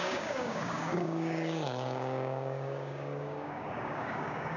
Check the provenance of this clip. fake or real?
fake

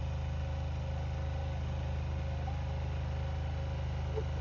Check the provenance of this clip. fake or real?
real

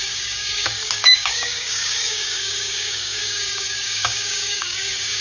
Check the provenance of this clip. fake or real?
fake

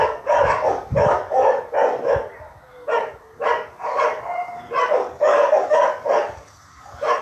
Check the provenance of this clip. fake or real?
fake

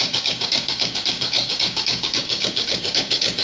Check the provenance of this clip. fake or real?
fake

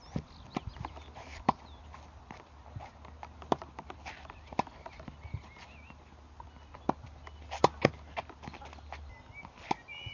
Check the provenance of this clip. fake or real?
real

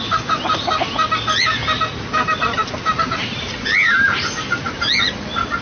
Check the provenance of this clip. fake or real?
real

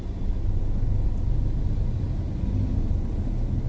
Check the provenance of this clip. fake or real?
real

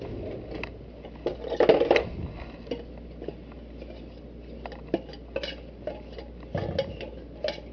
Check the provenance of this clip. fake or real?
real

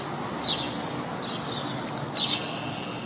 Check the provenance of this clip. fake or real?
real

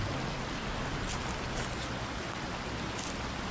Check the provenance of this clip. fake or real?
real